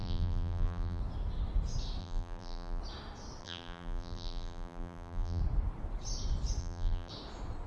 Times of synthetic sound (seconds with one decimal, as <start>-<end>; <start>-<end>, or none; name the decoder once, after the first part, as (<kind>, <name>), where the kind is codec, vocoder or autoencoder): 0.0-1.0 (vocoder, BigVGAN v2); 2.0-2.8; 3.4-5.4; 6.6-7.1